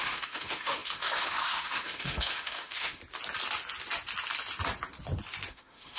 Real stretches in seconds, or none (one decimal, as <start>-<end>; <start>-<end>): 3.0-5.5